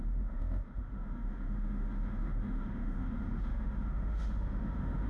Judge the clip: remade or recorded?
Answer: remade